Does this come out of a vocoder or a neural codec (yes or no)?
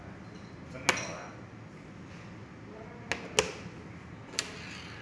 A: no